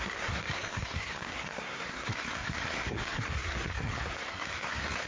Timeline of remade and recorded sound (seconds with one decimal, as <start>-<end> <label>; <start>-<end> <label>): 0.0-5.1 remade